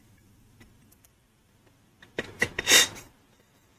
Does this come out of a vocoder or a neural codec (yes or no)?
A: yes